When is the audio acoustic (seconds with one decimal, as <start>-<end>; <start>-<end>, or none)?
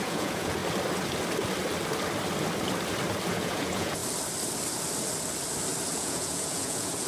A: 0.6-3.3; 4.0-5.9